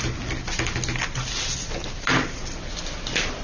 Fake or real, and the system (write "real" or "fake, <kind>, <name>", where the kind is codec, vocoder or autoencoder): real